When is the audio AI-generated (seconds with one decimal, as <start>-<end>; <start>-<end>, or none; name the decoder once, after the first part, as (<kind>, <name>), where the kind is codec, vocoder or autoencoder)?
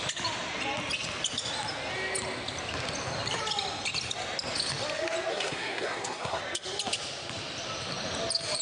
5.3-6.4 (codec, SNAC)